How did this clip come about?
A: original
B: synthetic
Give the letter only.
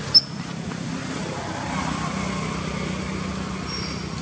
A